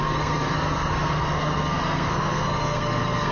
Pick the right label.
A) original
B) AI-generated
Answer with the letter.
B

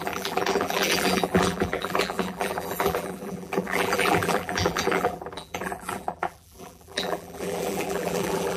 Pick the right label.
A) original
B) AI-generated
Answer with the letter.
B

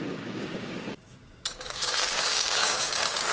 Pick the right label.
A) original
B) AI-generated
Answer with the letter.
B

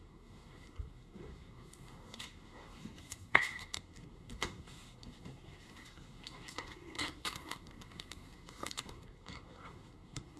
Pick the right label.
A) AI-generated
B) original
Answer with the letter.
A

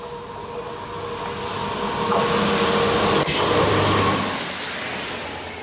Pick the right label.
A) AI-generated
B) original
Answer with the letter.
B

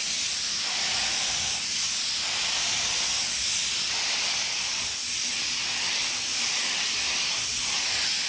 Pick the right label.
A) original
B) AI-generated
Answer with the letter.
A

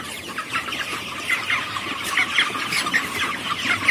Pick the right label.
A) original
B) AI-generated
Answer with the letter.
A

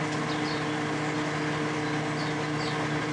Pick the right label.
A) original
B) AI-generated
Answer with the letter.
A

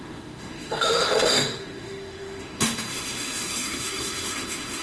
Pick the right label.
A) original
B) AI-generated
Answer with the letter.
B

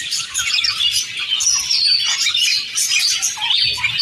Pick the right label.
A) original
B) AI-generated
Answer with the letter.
A